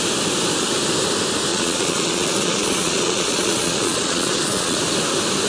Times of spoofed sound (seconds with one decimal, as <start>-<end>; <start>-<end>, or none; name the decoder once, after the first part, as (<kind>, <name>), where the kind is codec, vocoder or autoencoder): 1.5-4.8 (vocoder, Vocos)